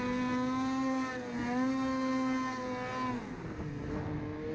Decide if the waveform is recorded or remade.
recorded